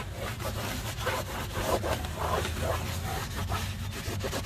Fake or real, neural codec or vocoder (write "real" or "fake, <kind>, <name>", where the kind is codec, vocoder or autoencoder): real